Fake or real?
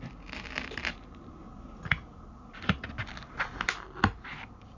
real